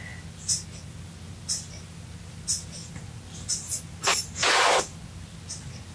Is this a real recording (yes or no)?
yes